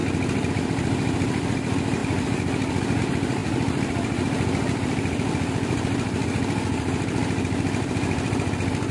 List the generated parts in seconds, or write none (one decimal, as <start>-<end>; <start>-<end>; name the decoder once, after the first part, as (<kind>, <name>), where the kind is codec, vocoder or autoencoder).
0.5-2.0 (vocoder, BigVGAN v2); 3.0-8.9